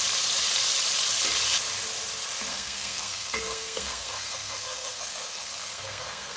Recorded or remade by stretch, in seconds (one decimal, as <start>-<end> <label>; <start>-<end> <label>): 0.0-2.5 recorded; 2.5-6.4 remade